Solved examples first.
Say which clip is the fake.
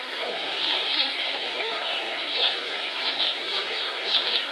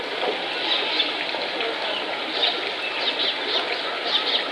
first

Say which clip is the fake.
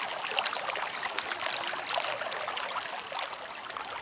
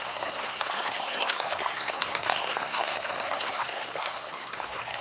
second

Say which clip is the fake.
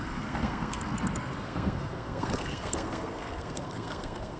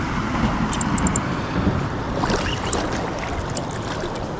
first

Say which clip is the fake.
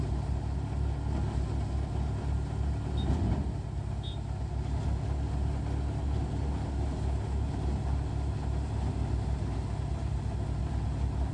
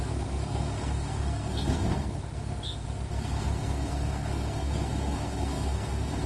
second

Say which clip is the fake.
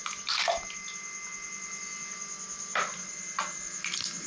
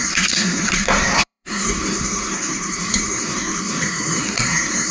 second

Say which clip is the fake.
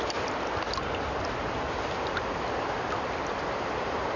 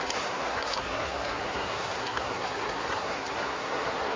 second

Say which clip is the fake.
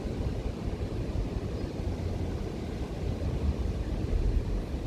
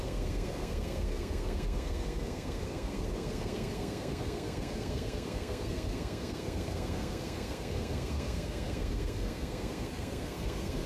second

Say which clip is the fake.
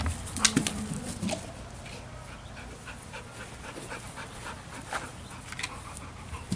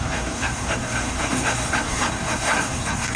second